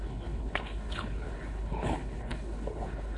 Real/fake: fake